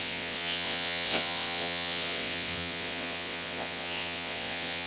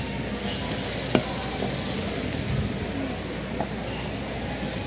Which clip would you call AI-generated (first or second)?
first